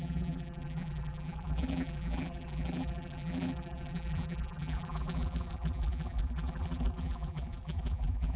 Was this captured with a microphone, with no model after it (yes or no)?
no